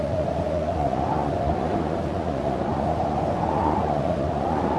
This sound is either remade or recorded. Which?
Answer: remade